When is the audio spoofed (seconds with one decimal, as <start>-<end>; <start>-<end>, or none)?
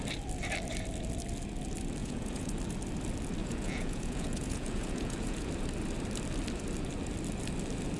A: 2.0-2.6; 3.4-5.5